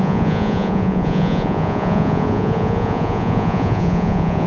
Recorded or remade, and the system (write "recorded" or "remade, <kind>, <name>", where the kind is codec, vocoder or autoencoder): remade, vocoder, Vocos